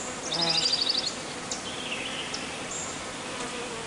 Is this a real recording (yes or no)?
yes